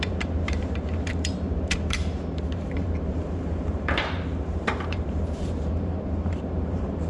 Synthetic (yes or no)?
yes